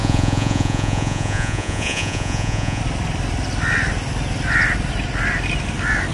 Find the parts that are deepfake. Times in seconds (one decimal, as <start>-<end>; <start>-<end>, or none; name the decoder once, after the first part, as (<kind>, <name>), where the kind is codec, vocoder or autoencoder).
0.0-2.8 (vocoder, Vocos)